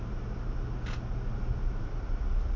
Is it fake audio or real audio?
real